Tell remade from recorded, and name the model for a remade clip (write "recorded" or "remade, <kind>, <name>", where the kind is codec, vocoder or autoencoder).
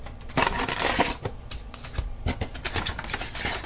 recorded